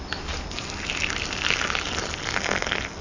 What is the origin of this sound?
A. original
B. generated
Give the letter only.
A